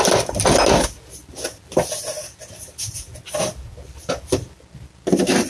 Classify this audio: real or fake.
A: real